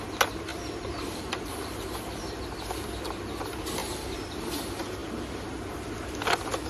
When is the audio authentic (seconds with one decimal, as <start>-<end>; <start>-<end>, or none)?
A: 0.0-0.5; 2.4-3.8; 4.5-6.7